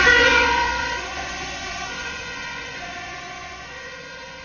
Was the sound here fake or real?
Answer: fake